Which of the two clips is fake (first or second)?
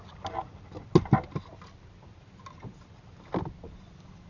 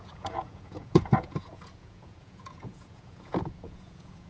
second